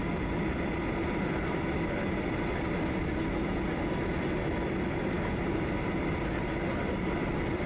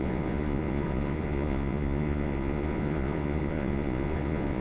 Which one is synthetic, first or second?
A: second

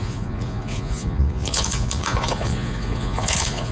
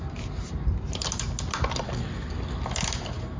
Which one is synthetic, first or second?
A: first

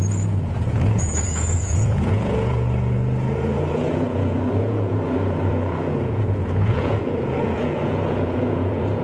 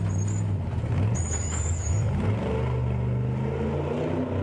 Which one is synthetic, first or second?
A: first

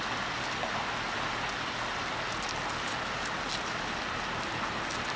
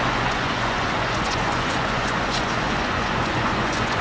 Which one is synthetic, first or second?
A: second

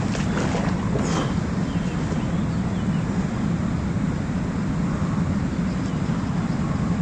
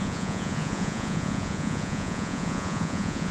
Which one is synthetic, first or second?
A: second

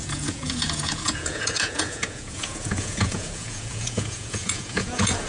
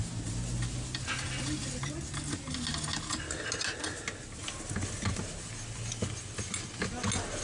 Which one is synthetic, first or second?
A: first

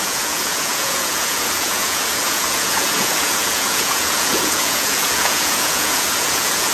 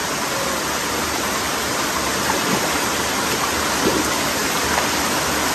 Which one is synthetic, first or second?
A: first